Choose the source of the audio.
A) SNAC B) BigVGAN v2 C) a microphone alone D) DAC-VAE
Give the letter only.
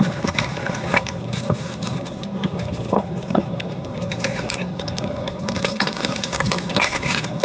A